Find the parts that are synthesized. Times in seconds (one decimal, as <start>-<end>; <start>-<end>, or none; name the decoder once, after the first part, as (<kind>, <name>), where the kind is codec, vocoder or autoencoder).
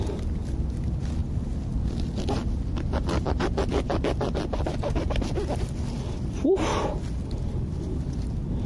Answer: none